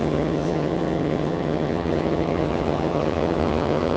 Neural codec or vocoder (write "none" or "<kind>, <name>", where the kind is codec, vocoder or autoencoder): vocoder, HiFi-GAN